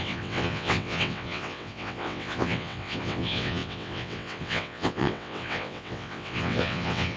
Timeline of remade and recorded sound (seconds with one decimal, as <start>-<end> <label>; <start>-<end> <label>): 0.0-7.2 remade